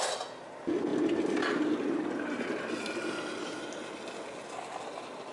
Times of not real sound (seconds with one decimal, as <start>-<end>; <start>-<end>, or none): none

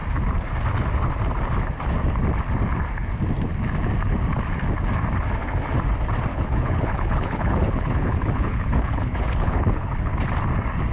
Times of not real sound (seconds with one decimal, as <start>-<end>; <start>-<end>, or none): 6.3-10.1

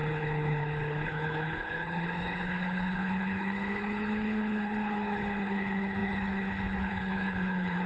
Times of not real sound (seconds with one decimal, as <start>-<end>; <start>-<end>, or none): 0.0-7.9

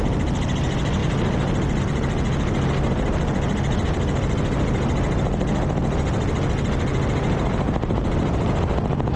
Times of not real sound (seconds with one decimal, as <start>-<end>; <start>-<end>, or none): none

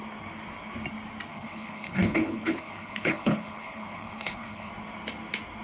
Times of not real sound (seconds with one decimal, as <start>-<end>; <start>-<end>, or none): 1.3-4.7